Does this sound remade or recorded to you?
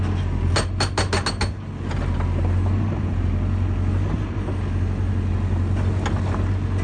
recorded